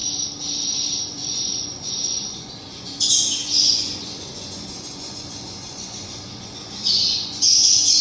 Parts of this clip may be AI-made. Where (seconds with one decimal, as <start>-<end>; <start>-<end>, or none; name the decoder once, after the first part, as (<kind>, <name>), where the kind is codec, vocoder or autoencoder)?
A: 1.0-8.0 (vocoder, Vocos)